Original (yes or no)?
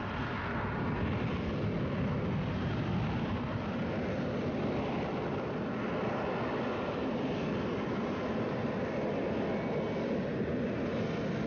yes